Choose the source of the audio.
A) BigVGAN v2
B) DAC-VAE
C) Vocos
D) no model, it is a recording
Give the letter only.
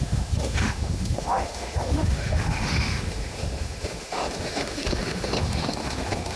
B